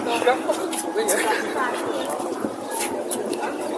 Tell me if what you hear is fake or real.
real